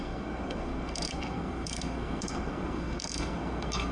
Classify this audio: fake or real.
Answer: fake